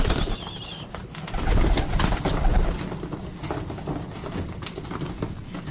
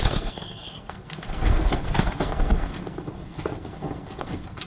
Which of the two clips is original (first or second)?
first